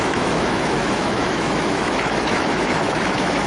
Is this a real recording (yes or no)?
no